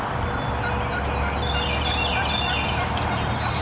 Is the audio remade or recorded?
recorded